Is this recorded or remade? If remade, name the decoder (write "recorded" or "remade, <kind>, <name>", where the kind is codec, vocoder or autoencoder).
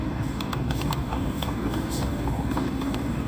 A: remade, codec, DAC